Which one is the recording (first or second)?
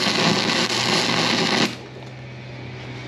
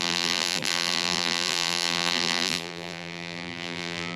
first